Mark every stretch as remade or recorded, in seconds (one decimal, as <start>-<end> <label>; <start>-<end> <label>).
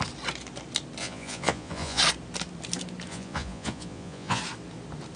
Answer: 0.0-1.0 recorded; 1.0-2.0 remade; 2.0-3.1 recorded; 3.1-4.4 remade; 4.4-5.2 recorded